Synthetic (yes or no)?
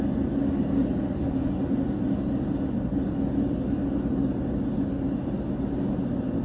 no